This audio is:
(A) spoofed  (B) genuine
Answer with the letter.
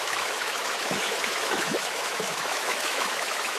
A